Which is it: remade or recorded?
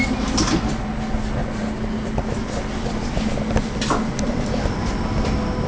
recorded